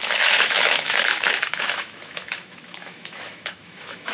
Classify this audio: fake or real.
fake